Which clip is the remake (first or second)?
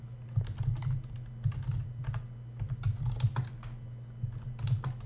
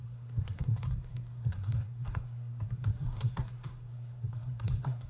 second